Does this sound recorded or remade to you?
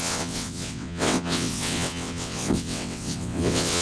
remade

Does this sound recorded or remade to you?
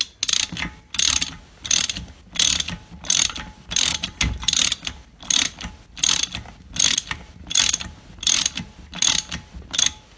recorded